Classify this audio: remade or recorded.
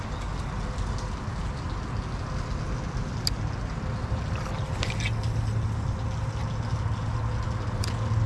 recorded